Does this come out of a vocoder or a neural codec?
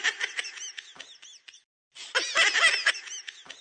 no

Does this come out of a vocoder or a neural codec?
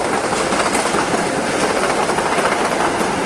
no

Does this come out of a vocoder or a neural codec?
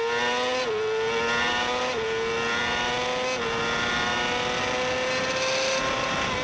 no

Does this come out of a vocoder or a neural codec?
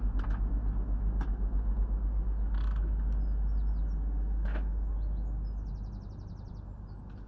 no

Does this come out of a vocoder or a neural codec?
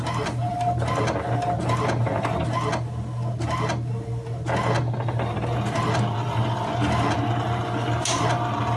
no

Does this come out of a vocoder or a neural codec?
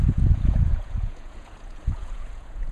yes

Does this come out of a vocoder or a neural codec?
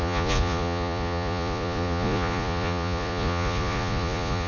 yes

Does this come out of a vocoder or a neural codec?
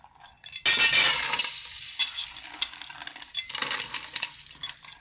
no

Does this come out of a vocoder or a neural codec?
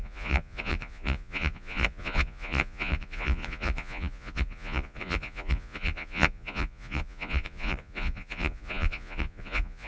yes